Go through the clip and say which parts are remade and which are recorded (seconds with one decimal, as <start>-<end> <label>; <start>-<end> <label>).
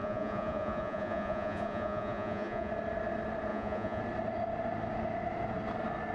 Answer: 0.0-2.7 remade; 2.7-3.5 recorded; 3.5-4.0 remade; 4.0-6.1 recorded